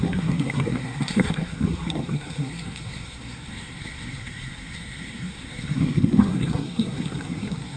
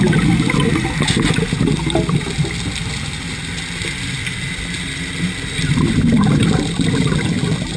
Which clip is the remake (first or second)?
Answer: first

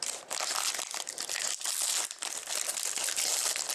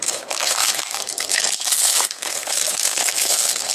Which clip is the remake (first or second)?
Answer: second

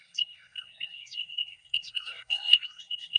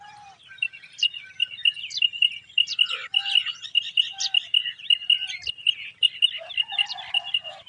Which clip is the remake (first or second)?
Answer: first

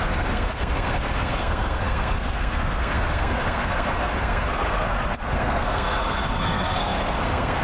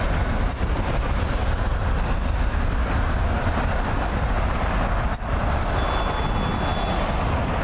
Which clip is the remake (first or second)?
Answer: first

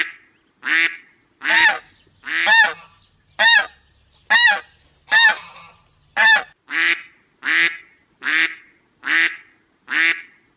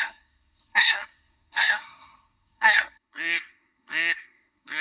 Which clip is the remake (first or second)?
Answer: second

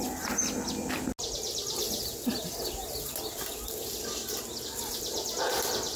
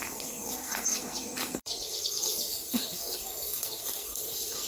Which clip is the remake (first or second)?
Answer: second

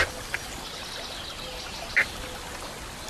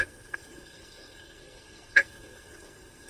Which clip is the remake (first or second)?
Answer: second